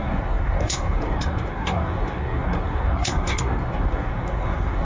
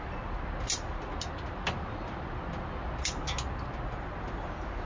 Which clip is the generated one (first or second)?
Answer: first